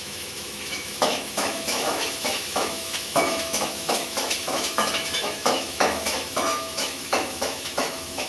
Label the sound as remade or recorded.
remade